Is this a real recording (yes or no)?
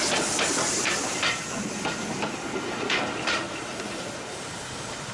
yes